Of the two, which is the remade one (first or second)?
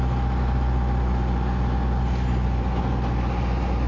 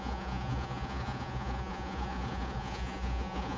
second